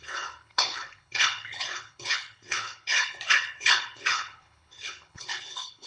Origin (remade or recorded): remade